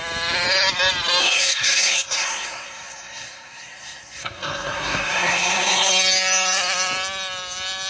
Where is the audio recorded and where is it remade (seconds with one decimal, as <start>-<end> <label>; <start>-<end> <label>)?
0.0-1.2 recorded; 1.2-5.9 remade; 5.9-7.9 recorded